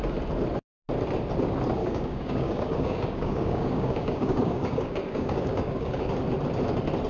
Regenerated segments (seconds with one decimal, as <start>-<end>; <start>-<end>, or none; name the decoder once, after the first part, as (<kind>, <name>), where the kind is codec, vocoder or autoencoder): 1.8-6.1 (codec, DAC)